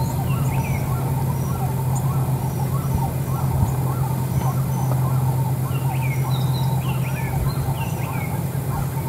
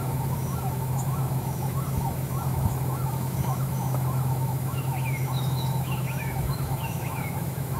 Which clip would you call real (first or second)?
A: first